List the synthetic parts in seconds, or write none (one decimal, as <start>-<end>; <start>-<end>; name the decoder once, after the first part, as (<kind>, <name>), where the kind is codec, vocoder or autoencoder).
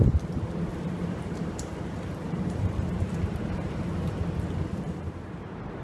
0.7-4.2 (vocoder, BigVGAN v2); 4.7-5.8